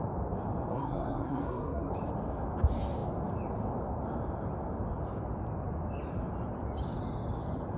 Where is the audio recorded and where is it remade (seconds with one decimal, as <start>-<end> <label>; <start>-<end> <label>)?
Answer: 0.0-0.7 recorded; 0.7-1.9 remade; 1.9-7.8 recorded